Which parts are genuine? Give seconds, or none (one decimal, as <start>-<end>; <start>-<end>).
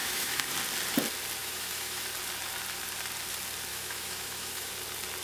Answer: 0.5-1.4; 2.0-3.7; 4.7-5.2